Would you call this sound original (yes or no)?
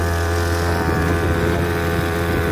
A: yes